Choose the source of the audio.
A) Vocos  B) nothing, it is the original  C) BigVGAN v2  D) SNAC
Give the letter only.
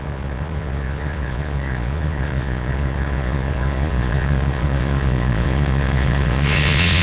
A